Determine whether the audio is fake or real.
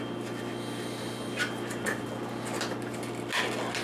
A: real